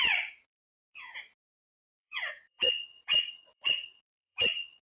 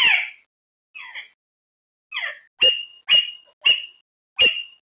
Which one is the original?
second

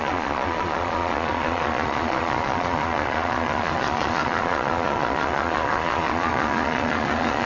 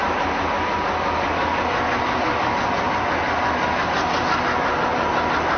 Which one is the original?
second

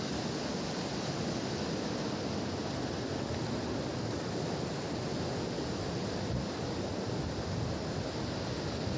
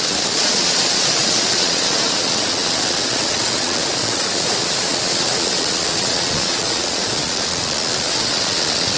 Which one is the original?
first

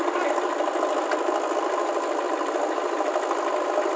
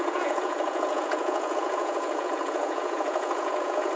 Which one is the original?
first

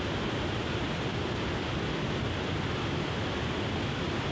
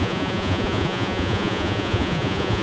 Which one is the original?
first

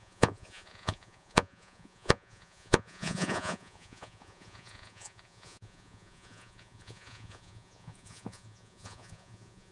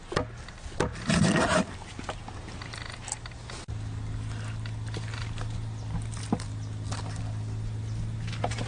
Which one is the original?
second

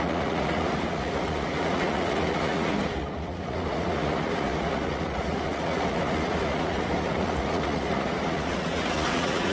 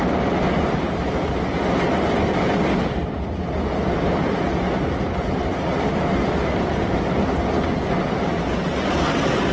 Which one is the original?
second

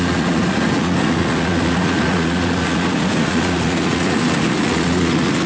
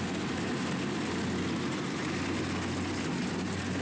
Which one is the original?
second